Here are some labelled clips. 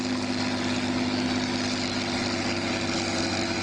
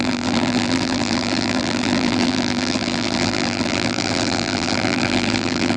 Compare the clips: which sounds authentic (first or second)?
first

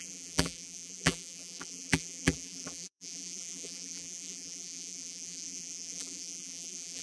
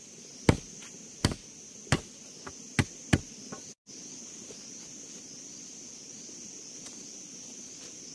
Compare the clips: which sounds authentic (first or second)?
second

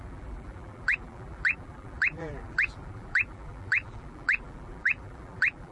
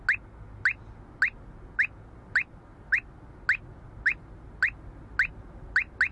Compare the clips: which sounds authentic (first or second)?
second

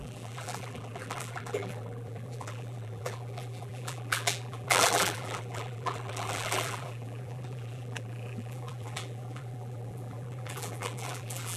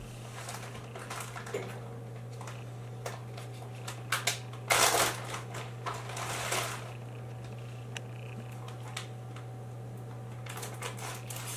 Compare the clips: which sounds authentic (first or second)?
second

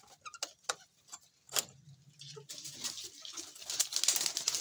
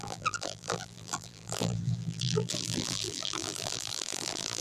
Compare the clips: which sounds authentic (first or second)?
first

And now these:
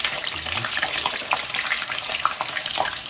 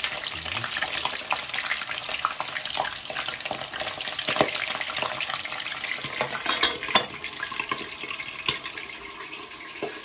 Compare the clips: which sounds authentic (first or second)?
second